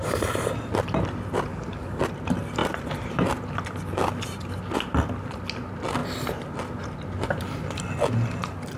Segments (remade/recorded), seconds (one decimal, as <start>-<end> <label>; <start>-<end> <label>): 0.0-1.5 recorded; 1.5-2.0 remade; 2.0-8.8 recorded